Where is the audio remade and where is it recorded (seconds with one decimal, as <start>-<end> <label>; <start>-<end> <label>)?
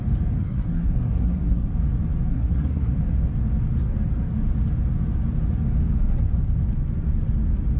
0.0-0.4 recorded; 0.4-1.7 remade; 1.7-2.3 recorded; 2.3-2.9 remade; 2.9-7.8 recorded